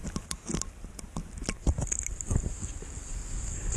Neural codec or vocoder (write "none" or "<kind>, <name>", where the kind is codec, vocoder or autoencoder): none